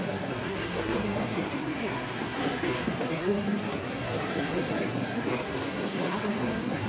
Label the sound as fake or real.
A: fake